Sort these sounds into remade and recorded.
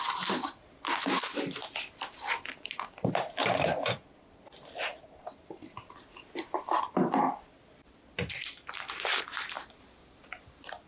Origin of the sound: remade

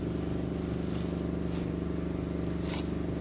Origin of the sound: recorded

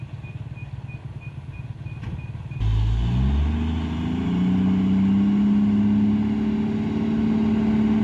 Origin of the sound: recorded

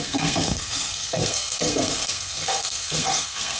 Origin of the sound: remade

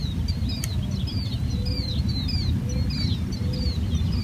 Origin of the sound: recorded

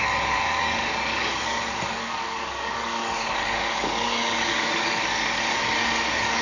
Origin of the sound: remade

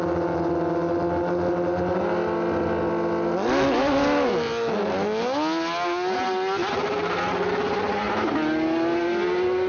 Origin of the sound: recorded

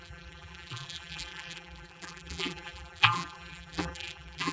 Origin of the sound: remade